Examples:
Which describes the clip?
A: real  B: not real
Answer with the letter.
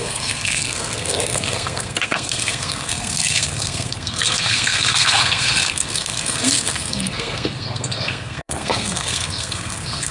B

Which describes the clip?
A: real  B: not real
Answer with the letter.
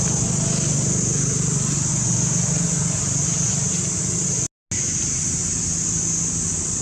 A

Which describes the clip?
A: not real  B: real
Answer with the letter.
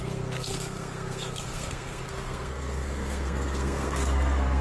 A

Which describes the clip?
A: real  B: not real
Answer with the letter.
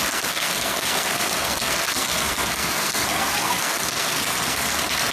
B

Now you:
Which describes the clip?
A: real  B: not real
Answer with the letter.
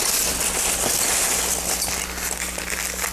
A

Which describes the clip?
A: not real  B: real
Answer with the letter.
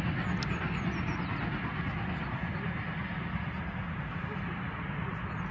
B